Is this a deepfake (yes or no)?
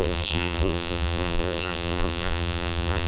yes